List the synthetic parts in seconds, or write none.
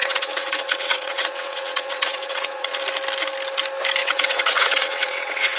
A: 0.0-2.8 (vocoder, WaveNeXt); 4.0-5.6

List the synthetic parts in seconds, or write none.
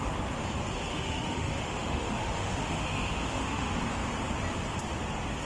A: 0.9-3.8 (autoencoder, DAC-VAE)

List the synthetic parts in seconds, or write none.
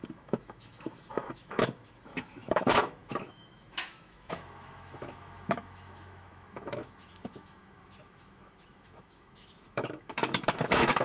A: 0.0-11.0 (autoencoder, DAC-VAE)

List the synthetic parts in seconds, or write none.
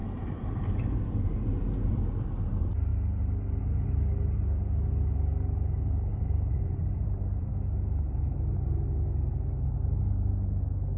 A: 0.0-2.3 (vocoder, BigVGAN v2); 2.9-3.6; 6.1-7.5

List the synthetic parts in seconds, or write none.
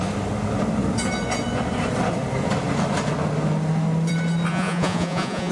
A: 4.5-5.5 (vocoder, Vocos)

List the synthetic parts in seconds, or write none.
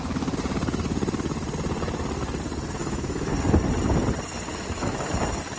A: 2.8-3.3 (autoencoder, DAC-VAE); 4.5-5.1